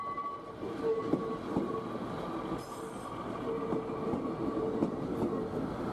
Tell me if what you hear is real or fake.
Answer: real